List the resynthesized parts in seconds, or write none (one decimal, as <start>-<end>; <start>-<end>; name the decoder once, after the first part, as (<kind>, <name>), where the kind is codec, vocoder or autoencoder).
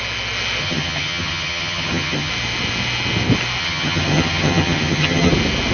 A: 0.6-2.3 (vocoder, HiFi-GAN); 3.6-5.3